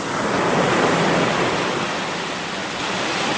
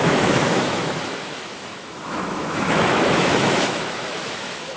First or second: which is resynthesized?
second